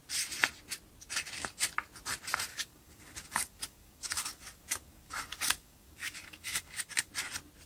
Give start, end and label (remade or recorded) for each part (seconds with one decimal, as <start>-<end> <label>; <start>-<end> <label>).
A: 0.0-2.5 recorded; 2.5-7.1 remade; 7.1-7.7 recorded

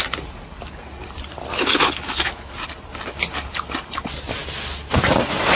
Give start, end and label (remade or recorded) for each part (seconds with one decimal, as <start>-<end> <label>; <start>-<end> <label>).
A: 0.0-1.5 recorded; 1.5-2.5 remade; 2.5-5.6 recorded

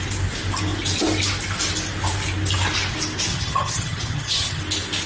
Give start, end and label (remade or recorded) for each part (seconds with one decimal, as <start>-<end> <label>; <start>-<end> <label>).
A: 0.0-3.3 recorded; 3.3-4.6 remade; 4.6-5.1 recorded